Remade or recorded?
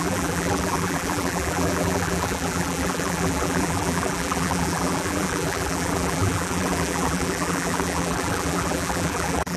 remade